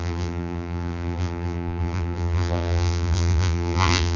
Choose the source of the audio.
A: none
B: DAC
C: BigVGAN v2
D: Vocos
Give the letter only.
C